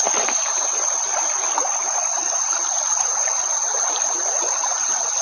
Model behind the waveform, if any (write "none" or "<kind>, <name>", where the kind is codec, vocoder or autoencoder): vocoder, BigVGAN v2